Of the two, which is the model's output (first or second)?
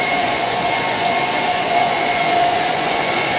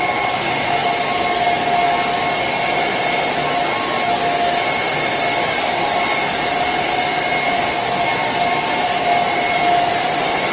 first